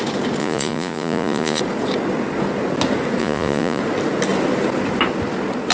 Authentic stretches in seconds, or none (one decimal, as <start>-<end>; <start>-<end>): 0.0-0.4; 1.6-3.2; 3.8-5.7